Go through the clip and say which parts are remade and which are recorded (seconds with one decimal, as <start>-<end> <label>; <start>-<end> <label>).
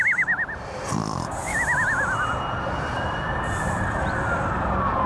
0.0-5.1 recorded